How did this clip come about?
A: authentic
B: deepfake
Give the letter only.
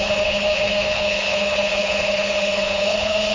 B